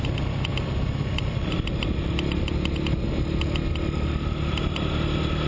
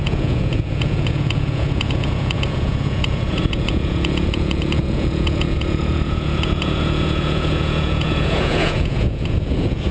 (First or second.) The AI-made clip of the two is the second